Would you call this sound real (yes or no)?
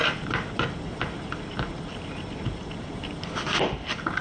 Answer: yes